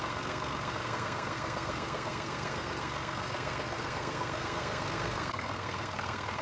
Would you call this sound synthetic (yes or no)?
yes